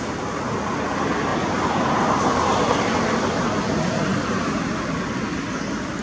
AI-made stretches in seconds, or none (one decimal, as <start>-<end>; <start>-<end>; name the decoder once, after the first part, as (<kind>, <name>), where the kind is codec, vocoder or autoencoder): 1.3-3.4 (vocoder, BigVGAN v2); 4.1-4.9